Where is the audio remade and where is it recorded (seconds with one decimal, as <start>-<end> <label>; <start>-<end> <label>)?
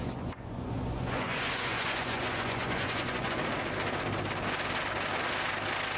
0.0-3.4 remade; 3.4-6.0 recorded